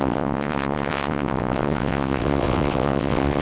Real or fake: fake